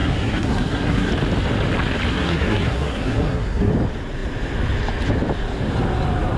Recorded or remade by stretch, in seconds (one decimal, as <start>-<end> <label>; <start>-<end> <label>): 0.0-1.1 remade; 1.1-2.1 recorded; 2.1-3.7 remade; 3.7-6.4 recorded